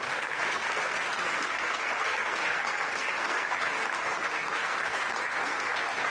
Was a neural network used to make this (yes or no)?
yes